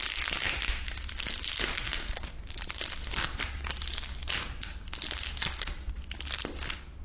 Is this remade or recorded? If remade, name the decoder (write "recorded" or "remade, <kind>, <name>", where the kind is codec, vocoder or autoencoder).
recorded